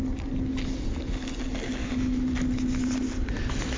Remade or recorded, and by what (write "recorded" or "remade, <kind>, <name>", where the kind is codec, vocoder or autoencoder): recorded